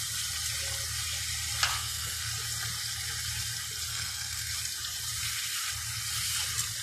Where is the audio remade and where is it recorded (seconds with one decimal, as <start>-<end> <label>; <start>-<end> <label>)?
0.0-1.7 recorded; 1.7-2.3 remade; 2.3-3.9 recorded; 3.9-4.5 remade; 4.5-6.8 recorded